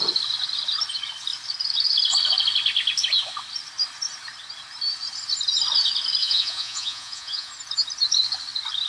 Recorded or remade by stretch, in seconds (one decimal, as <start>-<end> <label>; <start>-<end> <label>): 0.0-6.2 recorded; 6.2-7.5 remade; 7.5-8.9 recorded